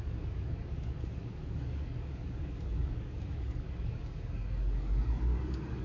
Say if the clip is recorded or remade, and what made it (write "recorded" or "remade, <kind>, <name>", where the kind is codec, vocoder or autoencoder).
remade, codec, DAC